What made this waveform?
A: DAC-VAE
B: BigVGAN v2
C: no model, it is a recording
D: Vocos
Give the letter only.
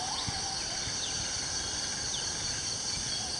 C